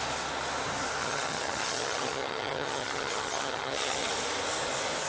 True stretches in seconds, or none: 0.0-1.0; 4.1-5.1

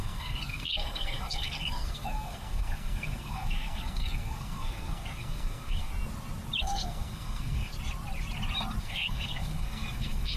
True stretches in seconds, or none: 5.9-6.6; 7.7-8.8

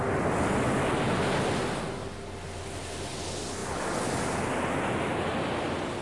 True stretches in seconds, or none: 0.0-6.0